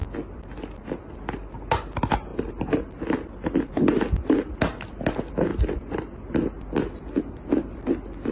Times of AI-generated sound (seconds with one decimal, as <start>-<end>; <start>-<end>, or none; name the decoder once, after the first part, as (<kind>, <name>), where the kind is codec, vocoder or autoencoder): none

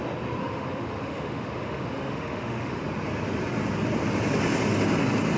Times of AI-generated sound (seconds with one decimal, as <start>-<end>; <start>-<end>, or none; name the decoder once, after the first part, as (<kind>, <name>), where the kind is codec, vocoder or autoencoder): 0.4-2.8 (autoencoder, DAC-VAE)